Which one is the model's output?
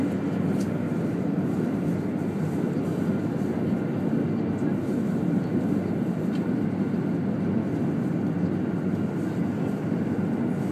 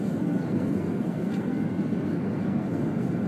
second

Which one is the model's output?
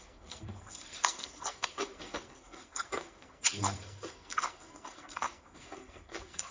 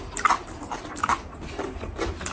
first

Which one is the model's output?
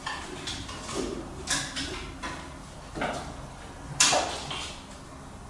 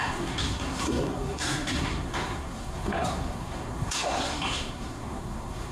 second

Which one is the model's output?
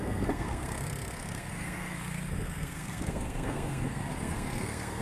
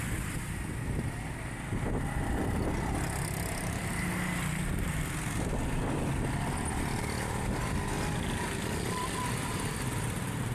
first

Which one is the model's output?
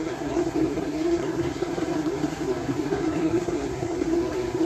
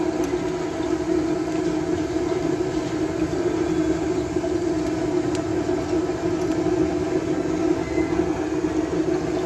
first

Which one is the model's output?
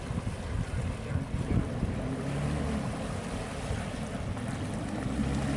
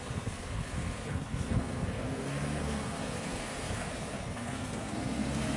second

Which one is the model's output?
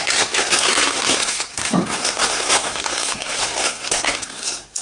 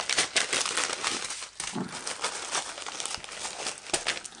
first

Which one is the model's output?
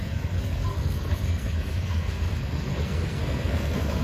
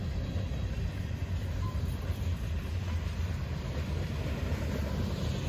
first